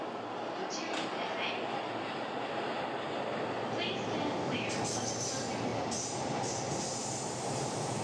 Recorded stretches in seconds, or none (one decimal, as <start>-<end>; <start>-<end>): 0.0-8.0